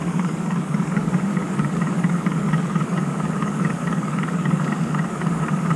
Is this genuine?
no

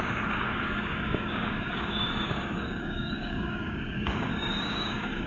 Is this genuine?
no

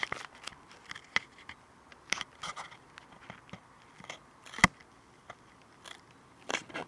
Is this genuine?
yes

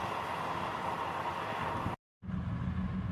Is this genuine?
yes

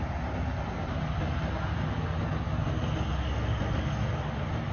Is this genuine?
yes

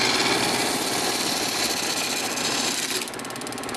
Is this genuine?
yes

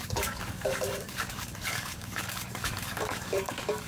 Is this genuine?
no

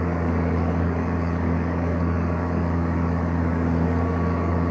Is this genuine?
no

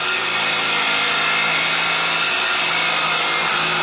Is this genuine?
yes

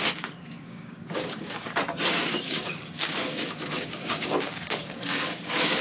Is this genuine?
no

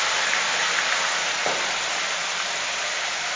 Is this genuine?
yes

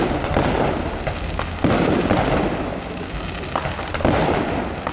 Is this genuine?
yes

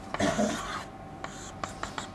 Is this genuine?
yes